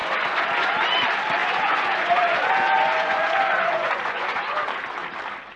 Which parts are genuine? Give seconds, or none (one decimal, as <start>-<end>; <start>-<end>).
0.7-1.4; 4.8-5.6